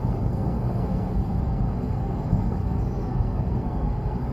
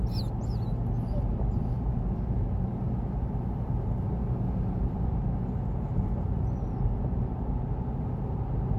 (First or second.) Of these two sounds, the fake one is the first